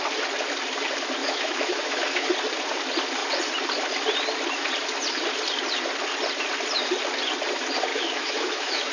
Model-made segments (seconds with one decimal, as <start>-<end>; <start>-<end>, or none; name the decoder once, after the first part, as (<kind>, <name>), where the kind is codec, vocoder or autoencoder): 1.2-2.3 (autoencoder, DAC-VAE); 7.9-8.9